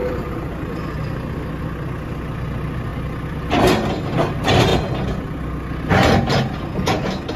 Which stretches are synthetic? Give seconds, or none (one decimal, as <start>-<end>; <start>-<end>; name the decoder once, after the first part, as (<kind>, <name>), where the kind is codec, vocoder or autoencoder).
0.0-0.8 (vocoder, BigVGAN v2)